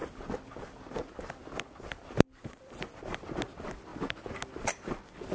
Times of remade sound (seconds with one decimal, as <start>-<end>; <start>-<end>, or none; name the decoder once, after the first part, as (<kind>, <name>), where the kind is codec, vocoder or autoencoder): 0.0-3.2 (vocoder, BigVGAN v2)